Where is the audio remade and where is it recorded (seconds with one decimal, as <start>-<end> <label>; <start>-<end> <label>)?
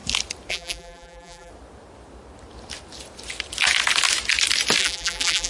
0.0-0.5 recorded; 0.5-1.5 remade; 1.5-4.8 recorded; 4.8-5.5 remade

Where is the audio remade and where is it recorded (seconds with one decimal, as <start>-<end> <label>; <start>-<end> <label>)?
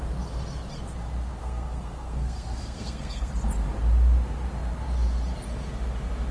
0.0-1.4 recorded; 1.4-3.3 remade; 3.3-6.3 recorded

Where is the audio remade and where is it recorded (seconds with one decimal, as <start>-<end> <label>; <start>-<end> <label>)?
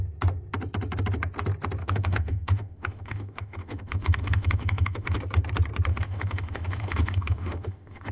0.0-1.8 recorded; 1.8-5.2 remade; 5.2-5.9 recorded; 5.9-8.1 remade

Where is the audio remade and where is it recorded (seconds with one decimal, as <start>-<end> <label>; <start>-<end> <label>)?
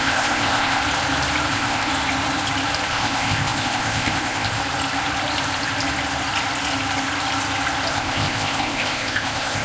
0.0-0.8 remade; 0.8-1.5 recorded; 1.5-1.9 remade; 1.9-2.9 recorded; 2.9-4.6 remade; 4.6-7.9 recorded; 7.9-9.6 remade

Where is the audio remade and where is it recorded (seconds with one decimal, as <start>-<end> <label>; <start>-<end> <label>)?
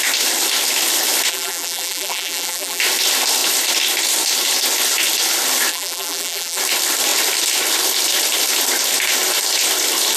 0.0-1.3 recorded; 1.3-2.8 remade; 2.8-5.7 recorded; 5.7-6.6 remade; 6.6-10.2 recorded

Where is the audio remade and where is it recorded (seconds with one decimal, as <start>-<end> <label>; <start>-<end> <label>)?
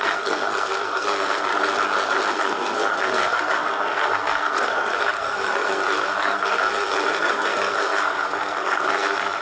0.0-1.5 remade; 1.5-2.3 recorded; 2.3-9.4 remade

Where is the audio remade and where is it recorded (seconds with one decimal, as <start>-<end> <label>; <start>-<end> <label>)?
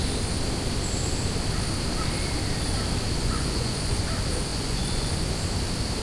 0.0-3.2 recorded; 3.2-4.0 remade; 4.0-4.5 recorded; 4.5-5.1 remade; 5.1-6.0 recorded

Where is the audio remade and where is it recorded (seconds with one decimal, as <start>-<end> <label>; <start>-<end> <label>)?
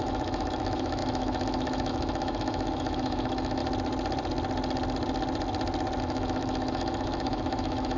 0.0-3.6 remade; 3.6-6.0 recorded; 6.0-8.0 remade